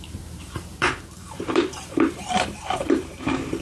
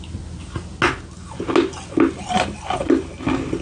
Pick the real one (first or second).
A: second